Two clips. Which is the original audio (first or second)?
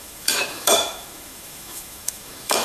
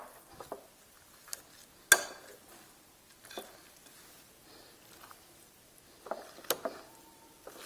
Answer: second